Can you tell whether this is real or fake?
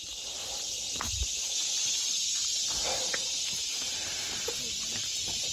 real